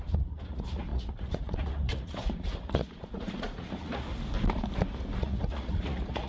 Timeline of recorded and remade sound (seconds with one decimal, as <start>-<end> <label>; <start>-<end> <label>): 0.0-4.1 remade; 4.1-5.2 recorded; 5.2-6.3 remade